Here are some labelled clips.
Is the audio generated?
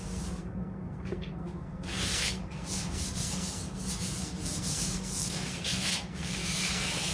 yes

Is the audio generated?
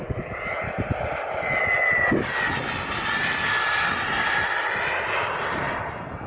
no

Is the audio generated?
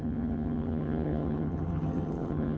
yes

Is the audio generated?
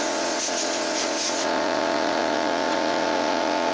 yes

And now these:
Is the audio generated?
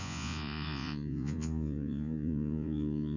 yes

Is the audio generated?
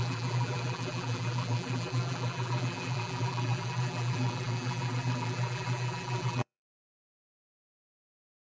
yes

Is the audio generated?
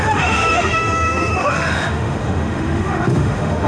yes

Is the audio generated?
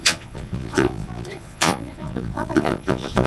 yes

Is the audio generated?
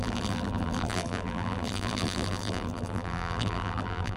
yes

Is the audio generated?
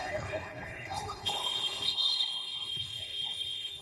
yes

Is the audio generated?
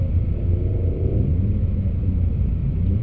no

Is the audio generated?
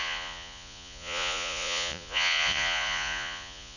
yes